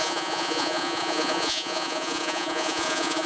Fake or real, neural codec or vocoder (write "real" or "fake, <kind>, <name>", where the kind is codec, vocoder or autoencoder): fake, vocoder, Vocos